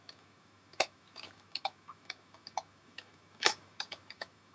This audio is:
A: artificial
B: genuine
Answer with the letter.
A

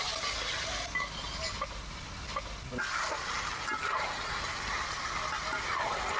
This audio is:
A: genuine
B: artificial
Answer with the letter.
A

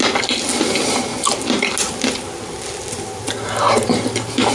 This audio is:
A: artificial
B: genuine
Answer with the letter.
B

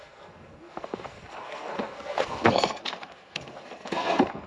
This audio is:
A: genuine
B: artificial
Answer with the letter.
B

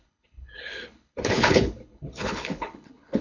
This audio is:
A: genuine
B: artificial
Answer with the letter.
B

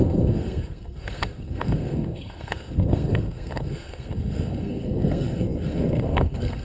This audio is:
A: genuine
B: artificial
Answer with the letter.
B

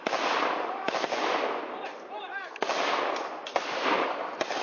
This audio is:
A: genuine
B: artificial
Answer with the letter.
A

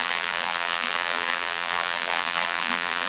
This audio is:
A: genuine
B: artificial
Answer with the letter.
B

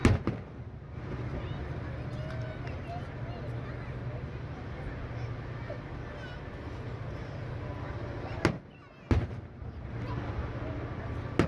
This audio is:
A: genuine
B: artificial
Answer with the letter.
A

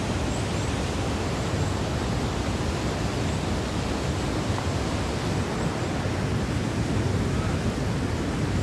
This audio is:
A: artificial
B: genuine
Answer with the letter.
B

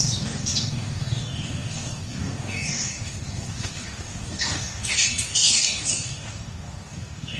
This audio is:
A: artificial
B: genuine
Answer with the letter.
A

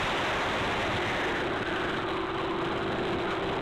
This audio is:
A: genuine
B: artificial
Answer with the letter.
A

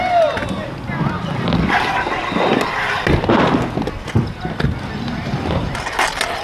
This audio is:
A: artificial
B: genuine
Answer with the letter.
B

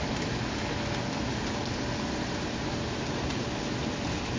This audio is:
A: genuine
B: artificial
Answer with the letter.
A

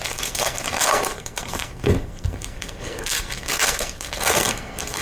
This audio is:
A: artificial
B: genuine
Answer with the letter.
A